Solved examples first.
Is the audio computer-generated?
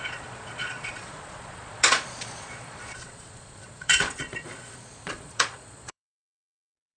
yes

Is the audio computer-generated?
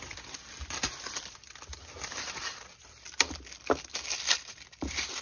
no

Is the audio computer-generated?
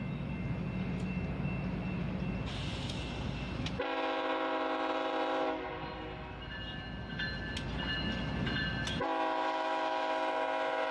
no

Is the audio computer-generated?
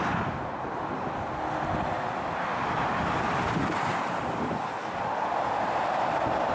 no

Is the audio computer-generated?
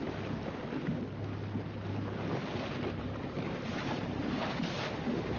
no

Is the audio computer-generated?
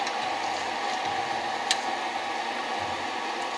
no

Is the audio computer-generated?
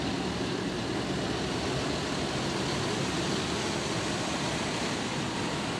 no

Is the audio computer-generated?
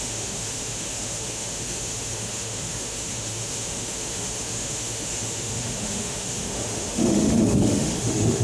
yes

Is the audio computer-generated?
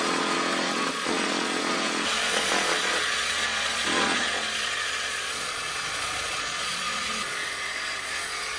yes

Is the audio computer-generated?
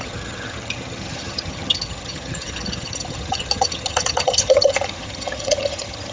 yes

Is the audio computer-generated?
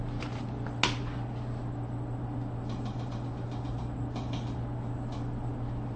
no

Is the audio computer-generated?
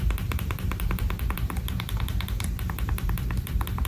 yes